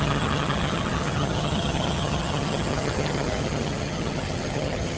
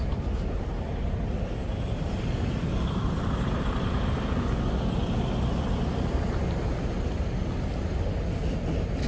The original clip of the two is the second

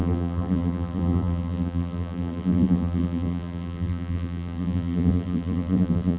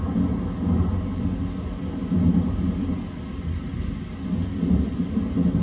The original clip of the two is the second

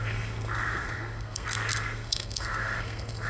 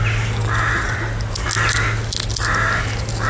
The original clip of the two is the second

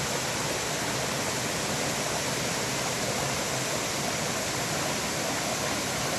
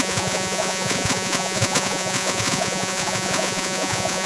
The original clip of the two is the first